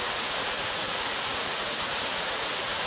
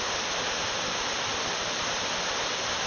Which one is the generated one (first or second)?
first